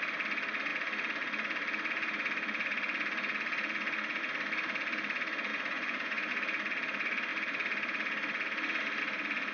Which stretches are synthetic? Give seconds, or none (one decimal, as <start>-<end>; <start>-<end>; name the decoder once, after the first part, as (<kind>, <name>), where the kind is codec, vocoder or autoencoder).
5.5-6.3 (vocoder, Vocos)